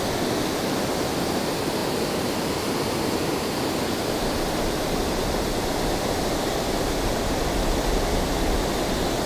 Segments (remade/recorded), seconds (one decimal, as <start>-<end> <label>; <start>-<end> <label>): 0.0-9.3 recorded